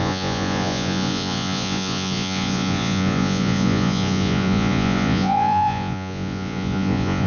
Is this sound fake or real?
fake